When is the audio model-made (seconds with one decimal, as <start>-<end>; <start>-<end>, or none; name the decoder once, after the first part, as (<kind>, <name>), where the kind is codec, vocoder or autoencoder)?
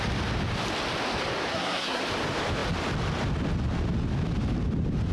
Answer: 1.5-2.0 (codec, SNAC)